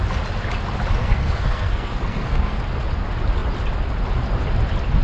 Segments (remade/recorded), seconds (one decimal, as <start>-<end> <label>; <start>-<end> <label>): 0.0-1.0 recorded; 1.0-2.6 remade; 2.6-5.0 recorded